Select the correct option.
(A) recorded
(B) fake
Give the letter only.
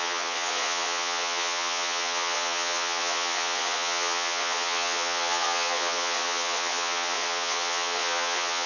B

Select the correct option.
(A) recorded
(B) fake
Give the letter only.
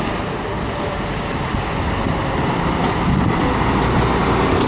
A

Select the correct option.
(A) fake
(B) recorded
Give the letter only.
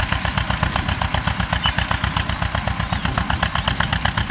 B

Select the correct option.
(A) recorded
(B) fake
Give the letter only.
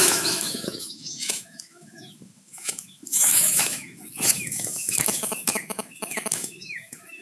B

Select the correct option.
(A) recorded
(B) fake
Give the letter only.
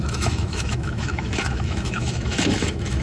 B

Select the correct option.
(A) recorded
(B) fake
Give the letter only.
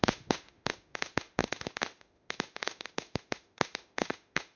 B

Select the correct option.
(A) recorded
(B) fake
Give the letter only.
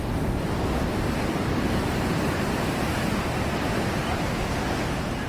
A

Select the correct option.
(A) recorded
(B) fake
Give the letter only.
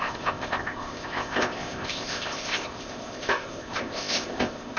B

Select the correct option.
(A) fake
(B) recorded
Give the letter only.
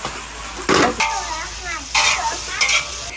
B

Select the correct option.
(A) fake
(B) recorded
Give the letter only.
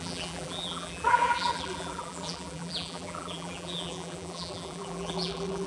A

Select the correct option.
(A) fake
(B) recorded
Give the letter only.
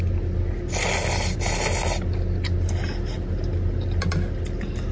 B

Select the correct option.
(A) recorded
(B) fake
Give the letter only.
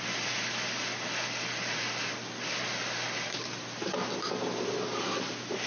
A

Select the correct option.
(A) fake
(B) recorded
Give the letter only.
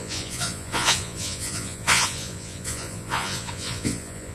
A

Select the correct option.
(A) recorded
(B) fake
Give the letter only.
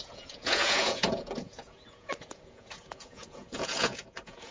B